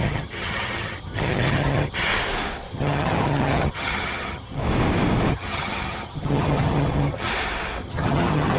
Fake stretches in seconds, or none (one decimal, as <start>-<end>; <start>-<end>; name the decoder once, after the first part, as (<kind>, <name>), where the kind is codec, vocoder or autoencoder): 0.0-2.1 (vocoder, HiFi-GAN); 2.7-4.6; 5.3-7.3; 7.8-8.6